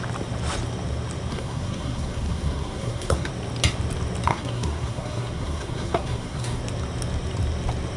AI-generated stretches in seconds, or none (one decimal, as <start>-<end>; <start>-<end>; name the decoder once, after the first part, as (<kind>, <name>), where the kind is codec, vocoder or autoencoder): 1.3-3.3 (codec, SNAC); 4.3-6.6